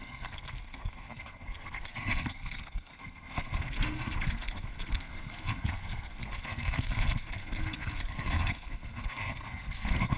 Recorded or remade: remade